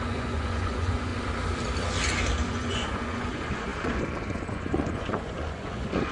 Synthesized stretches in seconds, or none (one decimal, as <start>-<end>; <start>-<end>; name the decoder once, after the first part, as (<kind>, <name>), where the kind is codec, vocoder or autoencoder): 0.0-1.1 (vocoder, Vocos); 2.5-6.1